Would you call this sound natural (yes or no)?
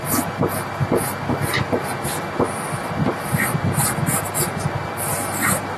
yes